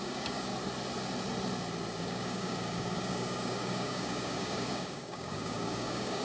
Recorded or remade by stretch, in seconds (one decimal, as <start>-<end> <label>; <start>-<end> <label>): 0.0-0.5 remade; 0.5-2.0 recorded; 2.0-6.2 remade